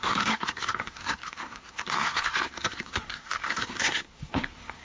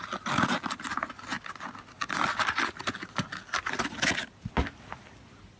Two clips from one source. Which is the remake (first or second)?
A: first